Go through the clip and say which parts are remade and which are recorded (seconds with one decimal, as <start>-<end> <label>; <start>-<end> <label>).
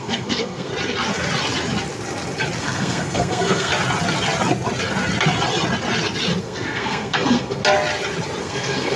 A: 0.0-0.7 remade; 0.7-2.6 recorded; 2.6-3.7 remade; 3.7-6.4 recorded; 6.4-7.6 remade; 7.6-8.4 recorded; 8.4-9.0 remade